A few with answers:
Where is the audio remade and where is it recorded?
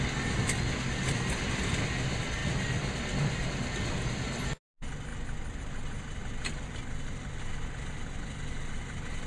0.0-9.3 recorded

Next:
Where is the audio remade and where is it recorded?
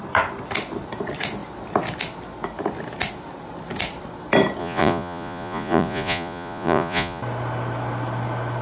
0.0-4.6 recorded; 4.6-7.2 remade; 7.2-8.6 recorded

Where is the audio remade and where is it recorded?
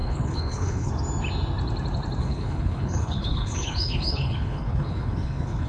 0.0-0.9 remade; 0.9-2.2 recorded; 2.2-5.7 remade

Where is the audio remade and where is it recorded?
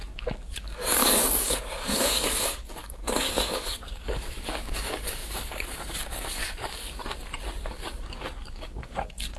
0.0-7.0 remade; 7.0-7.6 recorded; 7.6-9.4 remade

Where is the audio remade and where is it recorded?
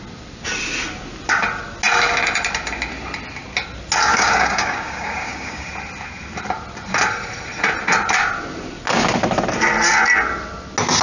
0.0-4.1 recorded; 4.1-5.7 remade; 5.7-11.0 recorded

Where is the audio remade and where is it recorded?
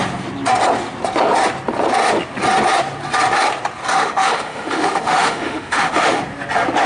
0.0-3.9 recorded; 3.9-6.2 remade; 6.2-6.9 recorded